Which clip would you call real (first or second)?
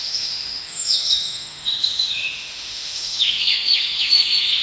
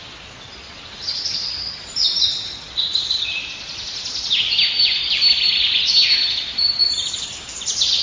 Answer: second